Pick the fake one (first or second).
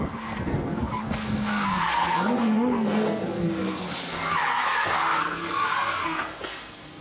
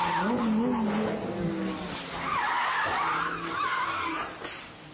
first